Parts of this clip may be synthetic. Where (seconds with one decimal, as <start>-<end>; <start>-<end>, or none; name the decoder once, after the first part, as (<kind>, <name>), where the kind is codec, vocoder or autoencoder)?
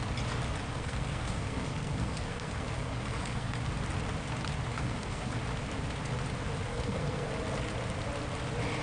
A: 0.7-3.6 (codec, SNAC); 4.7-5.4; 6.7-7.3